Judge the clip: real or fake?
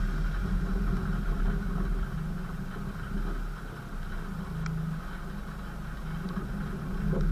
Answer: real